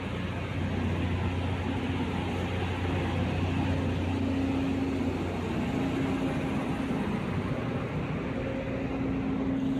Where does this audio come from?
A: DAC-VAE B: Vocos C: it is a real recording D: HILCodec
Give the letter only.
C